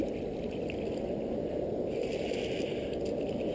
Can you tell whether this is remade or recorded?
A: recorded